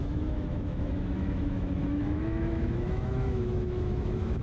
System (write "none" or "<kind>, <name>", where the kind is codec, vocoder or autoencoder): autoencoder, DAC-VAE